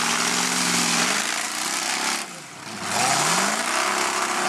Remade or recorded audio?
recorded